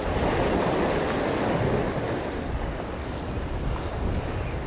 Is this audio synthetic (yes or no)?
no